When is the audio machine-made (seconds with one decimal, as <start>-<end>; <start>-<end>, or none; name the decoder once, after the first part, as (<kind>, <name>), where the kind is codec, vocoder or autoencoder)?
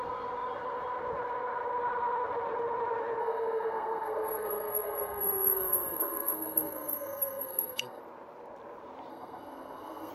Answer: 3.2-8.0 (codec, SNAC); 9.1-10.1